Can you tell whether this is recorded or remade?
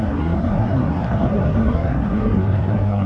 remade